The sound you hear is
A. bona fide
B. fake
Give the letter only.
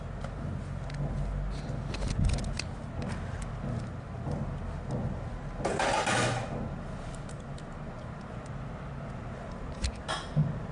A